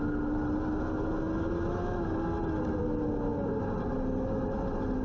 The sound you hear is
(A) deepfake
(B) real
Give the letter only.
B